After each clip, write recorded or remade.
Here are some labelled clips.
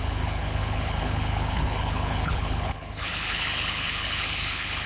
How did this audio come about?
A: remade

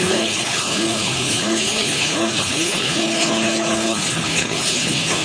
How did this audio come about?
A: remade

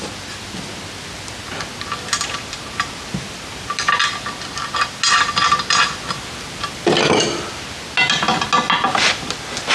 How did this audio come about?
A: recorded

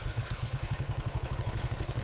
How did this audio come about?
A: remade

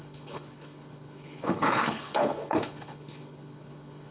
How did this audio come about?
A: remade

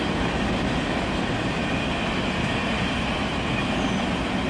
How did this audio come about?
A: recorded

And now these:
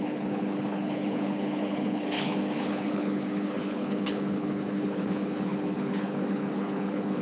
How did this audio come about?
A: remade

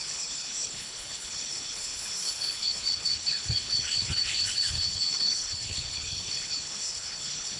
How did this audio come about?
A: remade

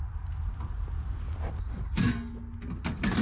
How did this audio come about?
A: recorded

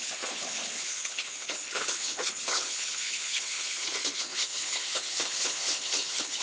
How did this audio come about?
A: remade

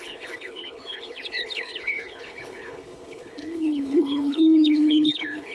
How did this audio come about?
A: remade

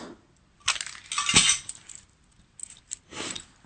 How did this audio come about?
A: recorded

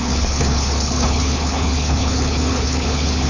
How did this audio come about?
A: remade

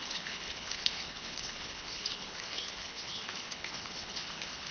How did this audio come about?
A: remade